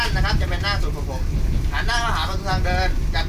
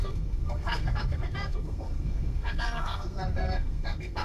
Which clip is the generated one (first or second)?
second